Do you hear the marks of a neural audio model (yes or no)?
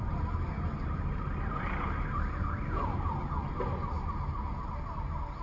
no